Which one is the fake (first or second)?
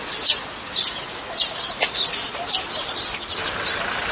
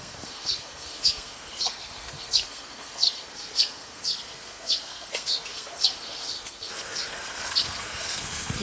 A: second